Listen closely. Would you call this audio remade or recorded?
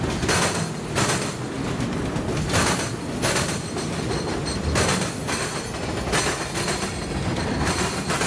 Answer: recorded